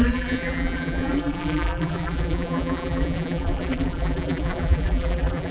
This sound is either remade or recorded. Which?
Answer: remade